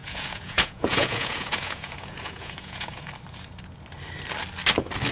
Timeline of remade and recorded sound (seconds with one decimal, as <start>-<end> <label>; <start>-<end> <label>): 0.0-3.1 remade; 3.1-5.1 recorded